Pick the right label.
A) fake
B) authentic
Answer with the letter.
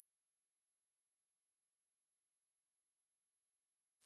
A